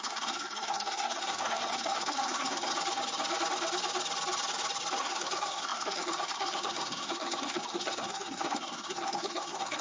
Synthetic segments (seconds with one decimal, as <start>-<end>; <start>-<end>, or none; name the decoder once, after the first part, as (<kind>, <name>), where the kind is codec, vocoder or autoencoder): 0.0-2.7 (codec, SNAC); 5.0-9.8